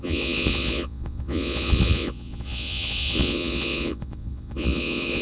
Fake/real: fake